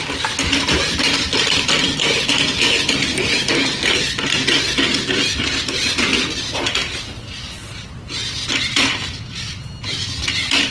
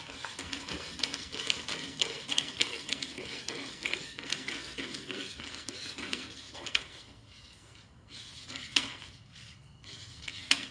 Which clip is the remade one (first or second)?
second